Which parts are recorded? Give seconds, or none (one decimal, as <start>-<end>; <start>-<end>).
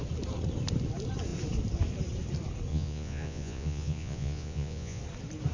0.0-2.7; 5.0-5.5